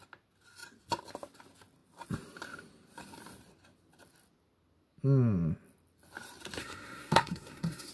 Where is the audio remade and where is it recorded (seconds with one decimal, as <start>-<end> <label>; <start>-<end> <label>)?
0.0-6.6 recorded; 6.6-7.9 remade